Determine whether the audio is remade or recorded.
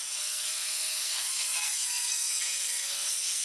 remade